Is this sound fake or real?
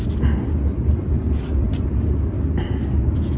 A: real